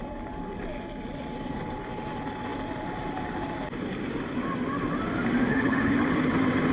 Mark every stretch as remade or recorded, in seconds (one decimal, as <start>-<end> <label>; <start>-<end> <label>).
0.0-5.5 recorded; 5.5-6.3 remade; 6.3-6.7 recorded